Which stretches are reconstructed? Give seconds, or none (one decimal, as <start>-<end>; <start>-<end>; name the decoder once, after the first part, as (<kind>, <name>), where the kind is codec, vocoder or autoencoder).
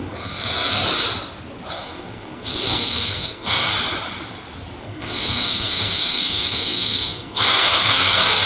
0.0-0.8 (codec, SNAC); 1.7-3.7; 4.8-8.5